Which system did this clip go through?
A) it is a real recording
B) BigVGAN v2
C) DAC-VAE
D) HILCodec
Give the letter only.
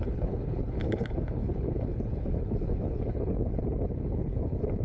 D